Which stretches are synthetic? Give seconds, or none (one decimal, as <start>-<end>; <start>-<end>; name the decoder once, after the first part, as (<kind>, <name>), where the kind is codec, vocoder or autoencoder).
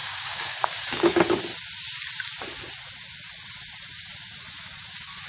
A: 0.0-1.4 (codec, DAC)